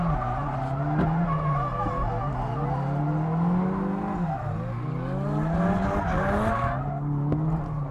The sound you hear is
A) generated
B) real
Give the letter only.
B